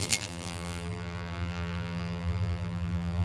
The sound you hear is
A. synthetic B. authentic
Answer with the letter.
A